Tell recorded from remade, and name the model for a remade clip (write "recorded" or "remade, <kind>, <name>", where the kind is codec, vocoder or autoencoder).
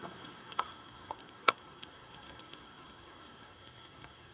remade, codec, SNAC